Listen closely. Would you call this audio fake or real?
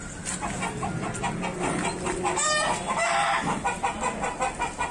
real